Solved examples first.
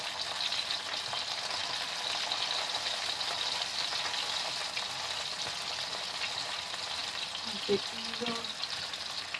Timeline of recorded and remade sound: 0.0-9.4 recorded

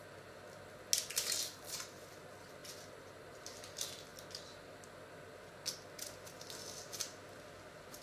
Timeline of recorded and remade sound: 0.0-8.0 recorded

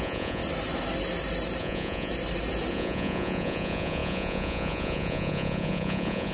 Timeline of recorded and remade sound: 0.0-0.4 remade; 0.4-1.6 recorded; 1.6-2.1 remade; 2.1-2.7 recorded; 2.7-6.3 remade

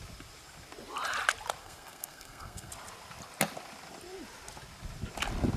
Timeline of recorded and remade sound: 0.0-1.6 recorded; 1.6-2.7 remade; 2.7-5.6 recorded